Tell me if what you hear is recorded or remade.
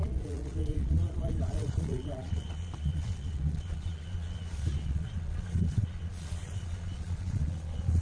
remade